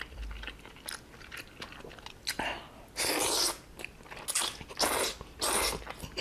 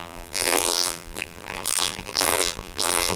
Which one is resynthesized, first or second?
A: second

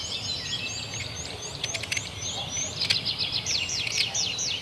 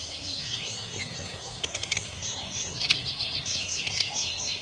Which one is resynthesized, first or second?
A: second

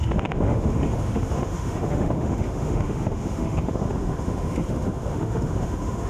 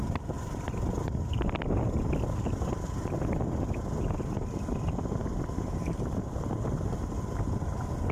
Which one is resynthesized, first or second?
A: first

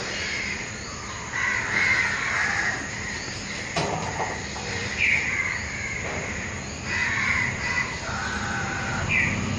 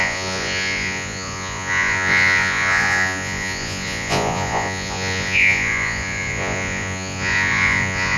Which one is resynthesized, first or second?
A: second